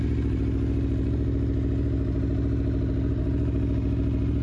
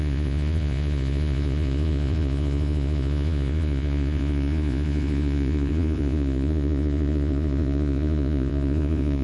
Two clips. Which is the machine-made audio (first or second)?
second